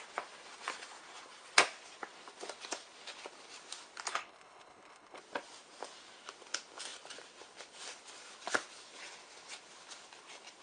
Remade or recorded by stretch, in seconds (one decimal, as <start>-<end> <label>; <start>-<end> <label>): 0.0-4.1 recorded; 4.1-5.2 remade; 5.2-10.6 recorded